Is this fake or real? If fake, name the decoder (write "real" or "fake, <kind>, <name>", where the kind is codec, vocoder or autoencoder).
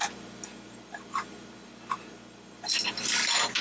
real